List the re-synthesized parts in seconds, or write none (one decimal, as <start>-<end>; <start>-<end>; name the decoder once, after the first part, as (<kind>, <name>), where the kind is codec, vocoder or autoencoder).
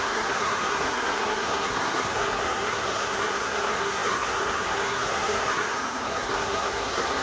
0.0-7.2 (codec, SNAC)